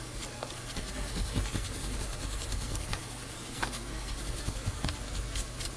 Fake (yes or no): yes